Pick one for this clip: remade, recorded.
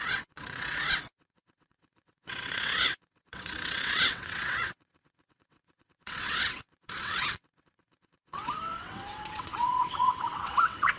remade